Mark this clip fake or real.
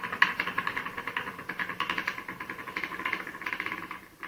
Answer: fake